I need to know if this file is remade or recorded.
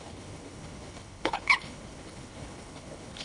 remade